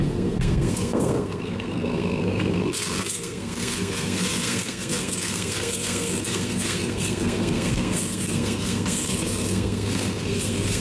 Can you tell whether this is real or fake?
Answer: fake